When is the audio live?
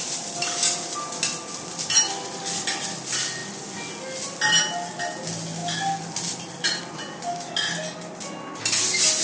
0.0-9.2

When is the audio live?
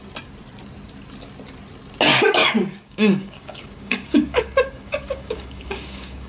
0.0-2.1